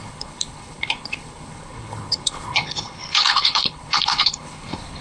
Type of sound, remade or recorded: remade